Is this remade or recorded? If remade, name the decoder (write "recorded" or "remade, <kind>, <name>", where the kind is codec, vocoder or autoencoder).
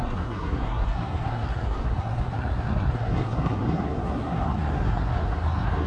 remade, codec, SNAC